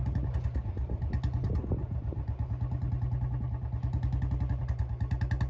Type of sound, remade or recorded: recorded